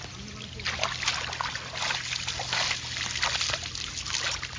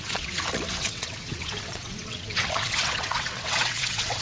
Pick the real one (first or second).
first